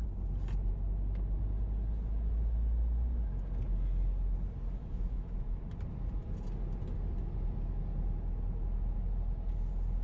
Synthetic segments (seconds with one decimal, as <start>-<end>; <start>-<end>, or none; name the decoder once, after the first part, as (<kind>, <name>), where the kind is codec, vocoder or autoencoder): 4.8-5.7 (autoencoder, DAC-VAE)